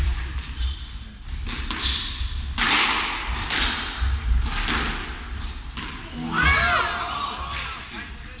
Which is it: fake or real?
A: real